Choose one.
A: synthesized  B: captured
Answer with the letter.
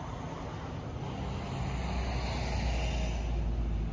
B